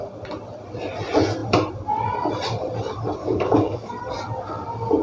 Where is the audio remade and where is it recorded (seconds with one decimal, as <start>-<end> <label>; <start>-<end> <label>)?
0.0-3.2 recorded; 3.2-3.9 remade; 3.9-5.0 recorded